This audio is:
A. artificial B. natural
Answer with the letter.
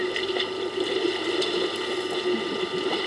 B